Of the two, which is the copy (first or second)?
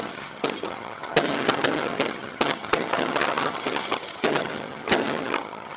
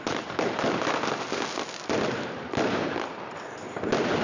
first